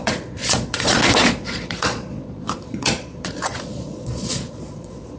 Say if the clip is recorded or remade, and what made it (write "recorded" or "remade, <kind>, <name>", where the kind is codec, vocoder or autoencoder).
remade, vocoder, Vocos